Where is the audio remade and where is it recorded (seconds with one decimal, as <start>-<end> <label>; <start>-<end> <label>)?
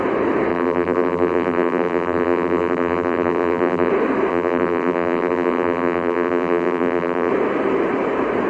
0.0-0.5 recorded; 0.5-3.9 remade; 3.9-4.3 recorded; 4.3-7.3 remade; 7.3-8.5 recorded